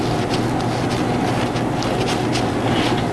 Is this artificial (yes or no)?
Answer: no